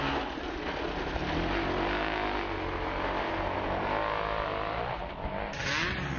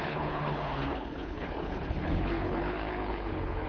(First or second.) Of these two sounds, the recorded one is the first